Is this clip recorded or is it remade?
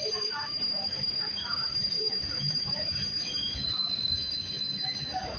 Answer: remade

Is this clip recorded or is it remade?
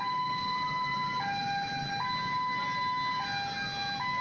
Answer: recorded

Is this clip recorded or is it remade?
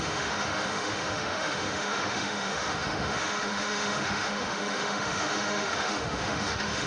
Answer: remade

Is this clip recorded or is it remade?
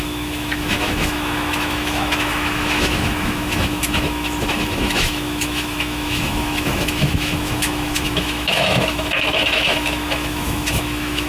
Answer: remade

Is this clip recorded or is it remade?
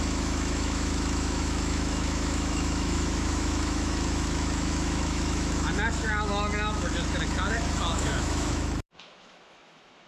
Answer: remade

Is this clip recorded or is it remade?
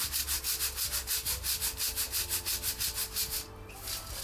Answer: recorded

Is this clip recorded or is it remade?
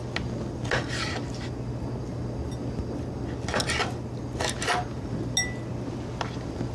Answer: recorded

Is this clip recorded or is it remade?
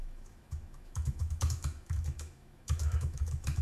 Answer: remade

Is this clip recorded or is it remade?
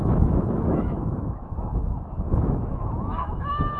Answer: remade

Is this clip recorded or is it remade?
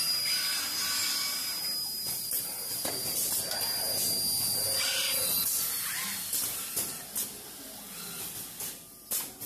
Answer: recorded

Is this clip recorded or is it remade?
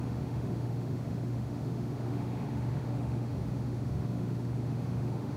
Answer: remade